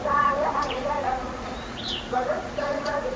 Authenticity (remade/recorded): remade